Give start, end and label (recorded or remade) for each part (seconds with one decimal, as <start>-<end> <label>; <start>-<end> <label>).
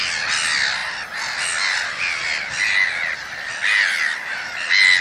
0.0-5.0 recorded